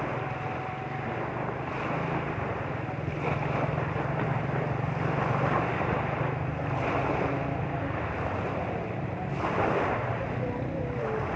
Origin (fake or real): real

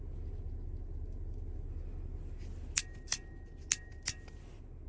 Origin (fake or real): real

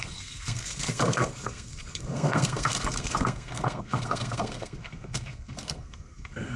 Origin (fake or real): fake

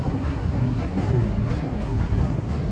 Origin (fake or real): fake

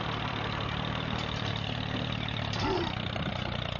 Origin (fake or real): fake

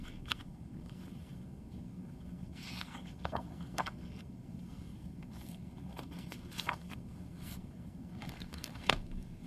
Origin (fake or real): fake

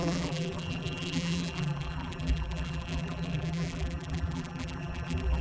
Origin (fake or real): fake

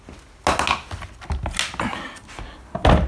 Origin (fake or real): real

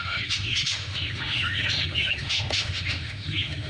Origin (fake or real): fake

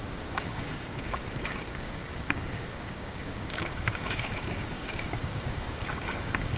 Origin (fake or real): fake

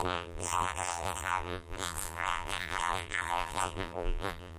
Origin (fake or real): fake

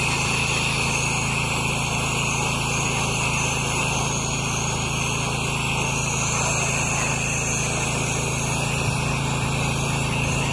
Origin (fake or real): real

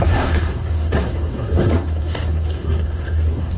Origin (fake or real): fake